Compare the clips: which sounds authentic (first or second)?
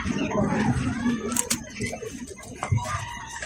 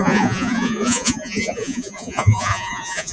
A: first